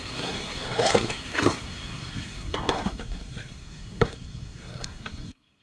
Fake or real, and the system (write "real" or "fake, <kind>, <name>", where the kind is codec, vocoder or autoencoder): fake, codec, SNAC